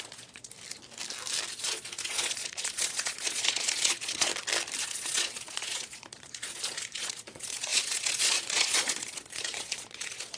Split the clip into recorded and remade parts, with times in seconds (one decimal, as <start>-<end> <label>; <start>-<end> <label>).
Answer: 0.0-0.5 remade; 0.5-1.5 recorded; 1.5-4.3 remade; 4.3-4.8 recorded; 4.8-10.4 remade